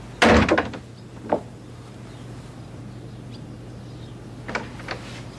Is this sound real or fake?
real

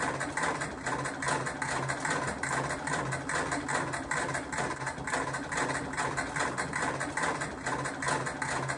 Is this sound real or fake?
real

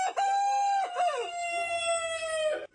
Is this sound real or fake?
real